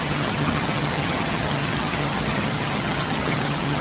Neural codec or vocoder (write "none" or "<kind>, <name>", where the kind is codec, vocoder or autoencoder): vocoder, HiFi-GAN